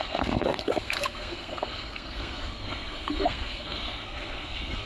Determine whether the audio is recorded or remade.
remade